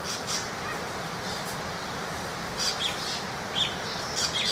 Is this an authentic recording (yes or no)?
yes